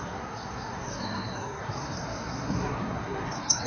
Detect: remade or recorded remade